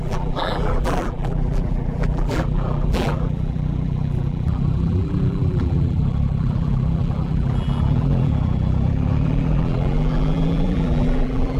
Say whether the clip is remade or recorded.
remade